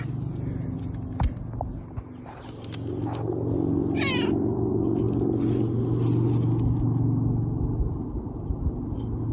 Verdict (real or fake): real